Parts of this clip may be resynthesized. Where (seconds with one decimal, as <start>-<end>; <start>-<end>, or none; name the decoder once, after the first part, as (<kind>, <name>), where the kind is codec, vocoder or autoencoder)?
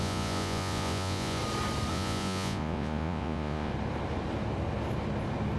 0.0-1.4 (vocoder, Vocos); 1.9-3.7